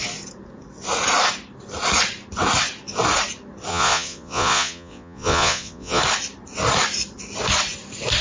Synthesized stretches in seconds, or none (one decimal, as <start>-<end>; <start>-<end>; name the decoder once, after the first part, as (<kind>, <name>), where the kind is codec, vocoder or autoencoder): 3.7-6.0 (vocoder, Vocos)

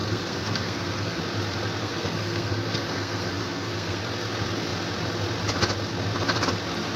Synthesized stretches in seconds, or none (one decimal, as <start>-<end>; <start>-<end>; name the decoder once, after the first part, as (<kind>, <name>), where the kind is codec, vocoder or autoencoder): 0.0-1.2 (codec, SNAC); 1.8-4.0

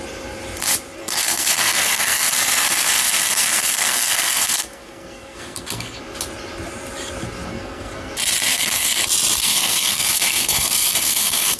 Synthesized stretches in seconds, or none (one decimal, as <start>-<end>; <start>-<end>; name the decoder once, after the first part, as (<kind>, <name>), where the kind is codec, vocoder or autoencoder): 1.0-6.0 (codec, SNAC); 7.5-8.1; 8.5-9.0; 9.4-11.6